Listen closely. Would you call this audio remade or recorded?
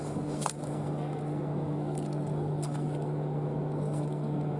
remade